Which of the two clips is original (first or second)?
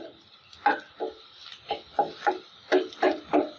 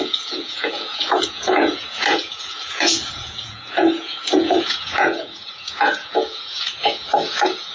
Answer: first